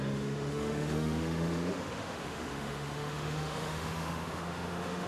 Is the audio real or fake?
fake